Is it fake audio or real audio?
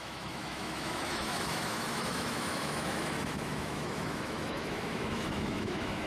fake